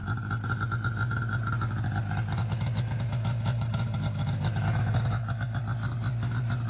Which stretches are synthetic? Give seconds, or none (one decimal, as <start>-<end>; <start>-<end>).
2.4-5.6

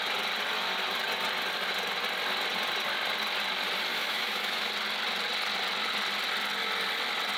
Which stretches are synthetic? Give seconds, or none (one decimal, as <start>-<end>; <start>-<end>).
3.9-4.7

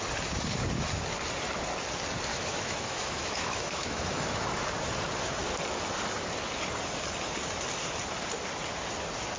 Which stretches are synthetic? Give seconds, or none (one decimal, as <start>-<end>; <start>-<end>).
2.3-4.6

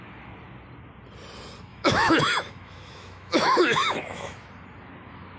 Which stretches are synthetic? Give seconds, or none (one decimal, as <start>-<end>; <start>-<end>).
1.7-4.5

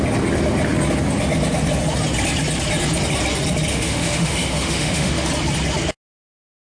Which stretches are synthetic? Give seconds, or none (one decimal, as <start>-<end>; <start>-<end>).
3.7-5.3

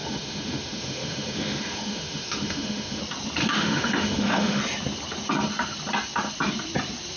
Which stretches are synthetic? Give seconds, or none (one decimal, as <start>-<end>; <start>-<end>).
0.0-3.0; 3.4-4.6

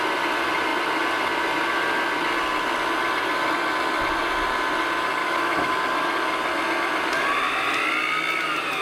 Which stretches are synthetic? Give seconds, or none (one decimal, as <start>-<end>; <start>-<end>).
5.2-5.7

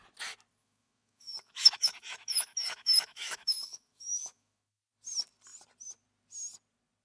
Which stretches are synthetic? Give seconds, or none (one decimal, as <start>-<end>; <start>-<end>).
0.6-4.8